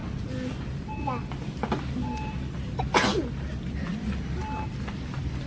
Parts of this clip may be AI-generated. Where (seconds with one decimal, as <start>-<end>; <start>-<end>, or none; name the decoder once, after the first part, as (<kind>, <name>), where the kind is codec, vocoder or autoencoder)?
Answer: none

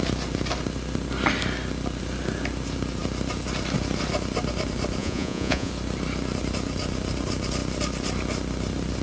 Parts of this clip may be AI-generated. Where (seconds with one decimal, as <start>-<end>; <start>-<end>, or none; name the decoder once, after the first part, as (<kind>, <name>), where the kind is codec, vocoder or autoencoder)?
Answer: 5.0-5.7 (vocoder, Vocos)

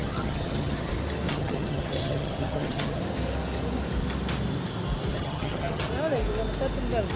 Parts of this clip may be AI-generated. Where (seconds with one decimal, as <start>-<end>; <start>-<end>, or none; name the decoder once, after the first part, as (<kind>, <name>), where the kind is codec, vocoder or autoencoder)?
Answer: 0.0-0.9 (vocoder, HiFi-GAN); 1.3-3.0; 5.1-5.9

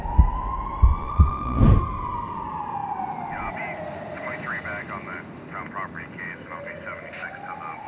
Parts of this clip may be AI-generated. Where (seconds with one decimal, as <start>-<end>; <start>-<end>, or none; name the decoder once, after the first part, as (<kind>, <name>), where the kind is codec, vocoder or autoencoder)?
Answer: 1.0-1.6 (vocoder, Vocos)